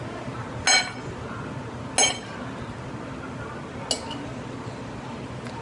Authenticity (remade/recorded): recorded